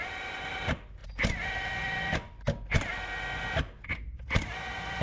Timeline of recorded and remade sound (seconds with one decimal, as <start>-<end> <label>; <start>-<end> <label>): 0.0-1.0 remade; 1.0-4.0 recorded; 4.0-5.0 remade